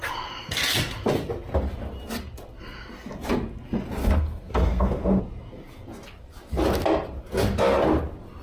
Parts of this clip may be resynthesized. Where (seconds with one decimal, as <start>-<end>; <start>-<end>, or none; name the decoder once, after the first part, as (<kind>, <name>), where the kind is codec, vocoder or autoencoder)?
4.0-5.2 (codec, SNAC)